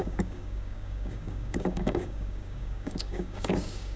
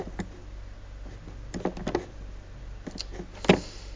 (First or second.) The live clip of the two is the second